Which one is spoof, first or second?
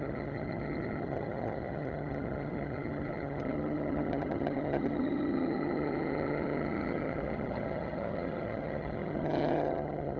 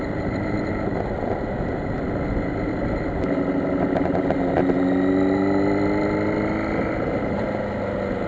first